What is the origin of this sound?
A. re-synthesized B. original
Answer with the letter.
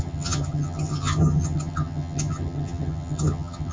A